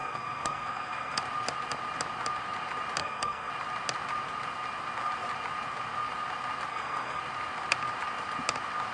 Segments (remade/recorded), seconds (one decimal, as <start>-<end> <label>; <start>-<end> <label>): 0.0-1.2 remade; 1.2-3.0 recorded; 3.0-3.5 remade; 3.5-6.7 recorded; 6.7-7.2 remade; 7.2-8.9 recorded